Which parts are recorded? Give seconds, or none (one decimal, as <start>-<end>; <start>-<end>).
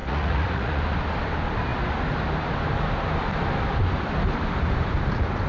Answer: 0.8-5.5